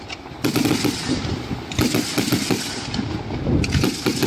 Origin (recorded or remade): recorded